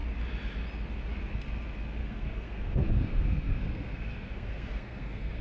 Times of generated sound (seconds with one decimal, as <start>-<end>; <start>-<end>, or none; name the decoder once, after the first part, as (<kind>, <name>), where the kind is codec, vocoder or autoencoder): 2.0-5.4 (codec, SNAC)